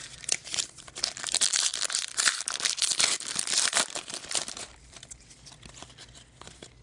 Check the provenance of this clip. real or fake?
fake